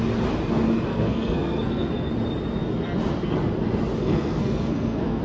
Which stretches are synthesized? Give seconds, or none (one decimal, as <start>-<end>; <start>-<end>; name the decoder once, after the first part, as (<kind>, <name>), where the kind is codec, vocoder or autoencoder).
0.9-2.1 (codec, SNAC); 4.0-5.2